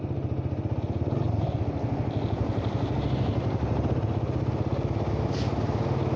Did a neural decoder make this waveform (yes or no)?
no